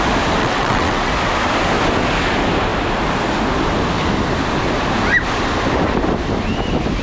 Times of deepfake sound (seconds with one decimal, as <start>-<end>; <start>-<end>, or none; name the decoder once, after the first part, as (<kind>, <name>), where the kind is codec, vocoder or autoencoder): 0.4-1.1 (vocoder, WaveNeXt)